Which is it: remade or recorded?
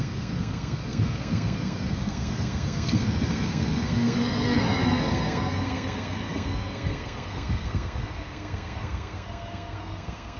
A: remade